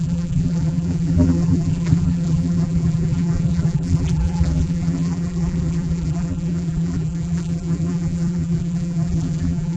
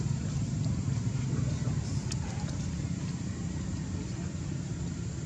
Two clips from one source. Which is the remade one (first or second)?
first